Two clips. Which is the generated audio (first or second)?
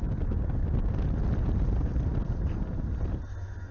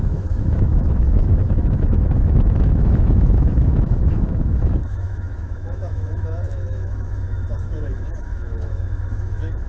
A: second